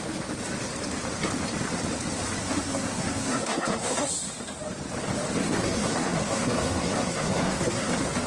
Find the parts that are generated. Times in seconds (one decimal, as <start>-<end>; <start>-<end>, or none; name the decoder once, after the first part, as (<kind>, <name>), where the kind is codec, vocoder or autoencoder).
2.4-4.1 (codec, SNAC); 5.4-7.9